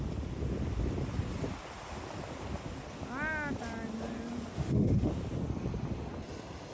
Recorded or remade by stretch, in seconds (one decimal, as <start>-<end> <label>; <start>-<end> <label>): 0.0-4.5 recorded; 4.5-5.1 remade; 5.1-6.7 recorded

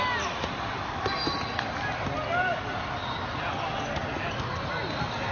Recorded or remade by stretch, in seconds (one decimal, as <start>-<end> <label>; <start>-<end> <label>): 0.0-5.3 recorded

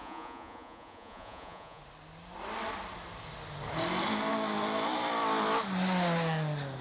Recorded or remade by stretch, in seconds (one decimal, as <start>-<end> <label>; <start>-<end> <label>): 0.0-1.8 remade; 1.8-6.8 recorded

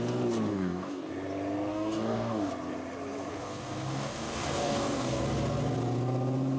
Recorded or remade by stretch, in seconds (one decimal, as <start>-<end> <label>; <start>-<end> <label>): 0.0-0.5 recorded; 0.5-1.1 remade; 1.1-1.7 recorded; 1.7-2.5 remade; 2.5-3.3 recorded; 3.3-5.2 remade; 5.2-6.6 recorded

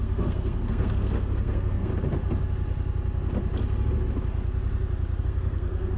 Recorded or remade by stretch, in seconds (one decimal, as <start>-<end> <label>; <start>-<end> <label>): 0.0-1.9 remade; 1.9-5.2 recorded; 5.2-6.0 remade